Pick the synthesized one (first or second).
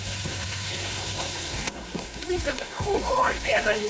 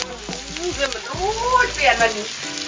first